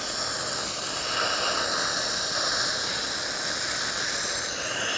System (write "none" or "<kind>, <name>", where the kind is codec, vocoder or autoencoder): none